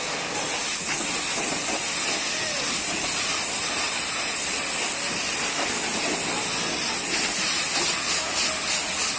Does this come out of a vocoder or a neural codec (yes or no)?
no